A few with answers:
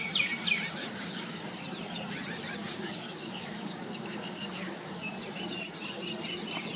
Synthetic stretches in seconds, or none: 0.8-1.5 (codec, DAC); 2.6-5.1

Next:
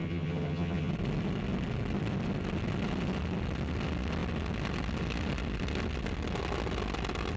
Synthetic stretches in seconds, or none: 0.0-0.9 (vocoder, HiFi-GAN)

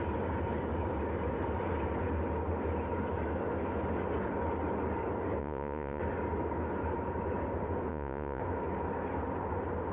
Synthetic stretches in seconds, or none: 5.4-6.0 (vocoder, Vocos); 7.9-8.4

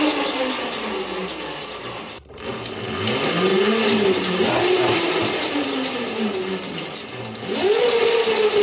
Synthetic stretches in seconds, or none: 1.2-2.7 (vocoder, BigVGAN v2); 3.5-7.2